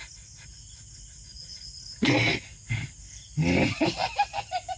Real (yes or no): yes